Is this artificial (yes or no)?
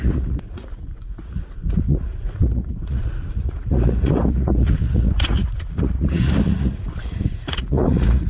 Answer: yes